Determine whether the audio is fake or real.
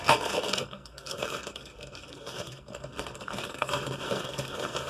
fake